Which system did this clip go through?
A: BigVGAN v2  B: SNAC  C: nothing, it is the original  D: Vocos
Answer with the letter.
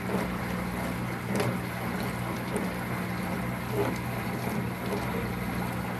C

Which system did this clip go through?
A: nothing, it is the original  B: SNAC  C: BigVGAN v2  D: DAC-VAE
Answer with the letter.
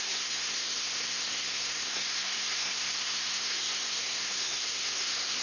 B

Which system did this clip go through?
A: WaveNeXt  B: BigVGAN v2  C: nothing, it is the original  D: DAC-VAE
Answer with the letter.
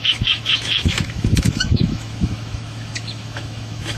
D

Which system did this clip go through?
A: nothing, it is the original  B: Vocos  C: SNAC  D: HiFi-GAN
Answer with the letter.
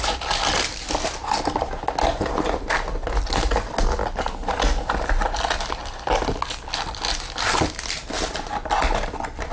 A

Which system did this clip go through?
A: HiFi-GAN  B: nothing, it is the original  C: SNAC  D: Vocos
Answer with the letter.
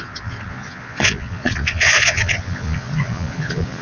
D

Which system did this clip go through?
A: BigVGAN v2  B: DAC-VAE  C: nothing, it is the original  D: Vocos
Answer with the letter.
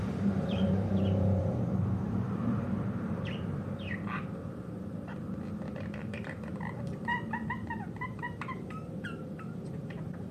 A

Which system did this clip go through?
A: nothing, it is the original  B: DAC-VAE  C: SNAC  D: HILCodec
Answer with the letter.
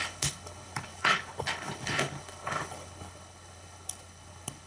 D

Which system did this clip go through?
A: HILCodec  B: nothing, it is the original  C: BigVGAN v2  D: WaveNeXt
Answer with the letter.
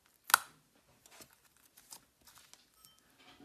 B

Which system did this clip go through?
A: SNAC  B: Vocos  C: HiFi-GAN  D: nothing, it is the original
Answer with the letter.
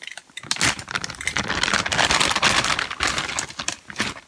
D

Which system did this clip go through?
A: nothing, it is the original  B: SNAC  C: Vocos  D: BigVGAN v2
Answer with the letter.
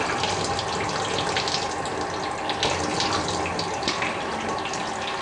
A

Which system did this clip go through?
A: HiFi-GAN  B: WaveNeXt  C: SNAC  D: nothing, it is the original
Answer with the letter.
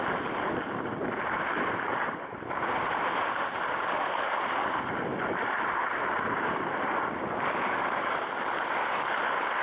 D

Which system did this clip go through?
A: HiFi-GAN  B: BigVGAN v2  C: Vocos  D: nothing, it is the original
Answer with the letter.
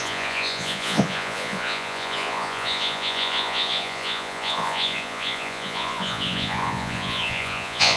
C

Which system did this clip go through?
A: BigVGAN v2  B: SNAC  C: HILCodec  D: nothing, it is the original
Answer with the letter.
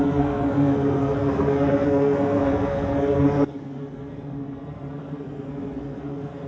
B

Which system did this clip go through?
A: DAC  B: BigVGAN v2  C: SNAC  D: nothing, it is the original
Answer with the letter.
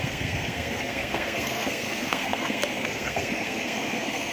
C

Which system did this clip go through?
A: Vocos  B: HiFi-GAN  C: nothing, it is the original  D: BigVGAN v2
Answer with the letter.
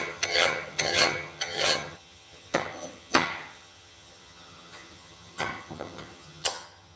B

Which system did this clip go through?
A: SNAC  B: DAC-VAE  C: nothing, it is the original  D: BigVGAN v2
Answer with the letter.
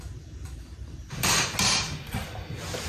C